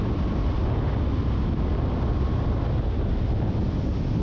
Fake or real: real